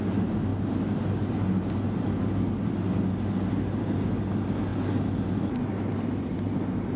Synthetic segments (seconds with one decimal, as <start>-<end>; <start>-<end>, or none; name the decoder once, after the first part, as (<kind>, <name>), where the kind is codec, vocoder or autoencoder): none